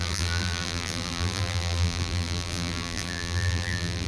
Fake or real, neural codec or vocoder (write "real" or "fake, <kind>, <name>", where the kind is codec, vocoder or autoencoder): fake, vocoder, BigVGAN v2